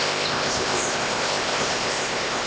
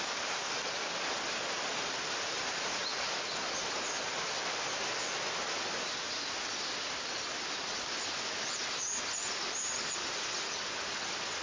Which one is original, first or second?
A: second